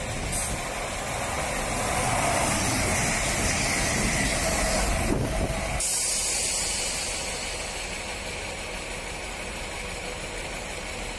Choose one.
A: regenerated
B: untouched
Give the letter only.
B